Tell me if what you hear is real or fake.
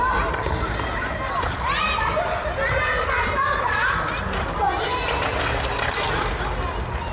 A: real